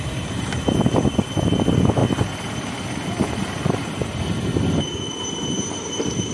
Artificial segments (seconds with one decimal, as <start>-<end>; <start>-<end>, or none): none